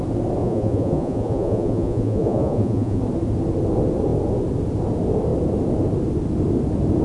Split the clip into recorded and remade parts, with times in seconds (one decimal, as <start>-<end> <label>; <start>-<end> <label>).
0.0-0.4 recorded; 0.4-3.0 remade; 3.0-7.0 recorded